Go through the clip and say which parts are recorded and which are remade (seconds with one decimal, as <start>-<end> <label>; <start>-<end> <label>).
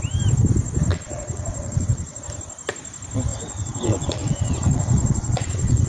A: 0.0-0.9 recorded; 0.9-2.2 remade; 2.2-3.3 recorded; 3.3-5.9 remade